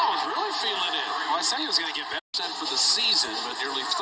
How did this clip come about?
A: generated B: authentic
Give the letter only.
B